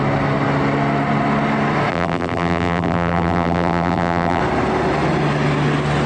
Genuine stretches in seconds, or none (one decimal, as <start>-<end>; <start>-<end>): 0.0-1.9; 4.4-6.1